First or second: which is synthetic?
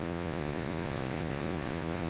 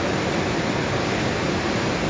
first